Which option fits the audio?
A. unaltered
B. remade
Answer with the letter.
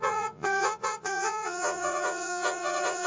B